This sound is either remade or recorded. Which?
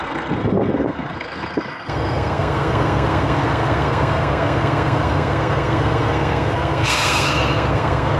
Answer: remade